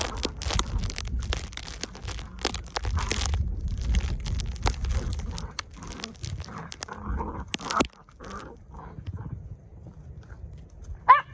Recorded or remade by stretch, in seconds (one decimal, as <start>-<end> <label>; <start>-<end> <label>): 0.0-11.3 recorded